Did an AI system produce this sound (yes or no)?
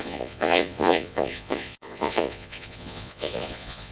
yes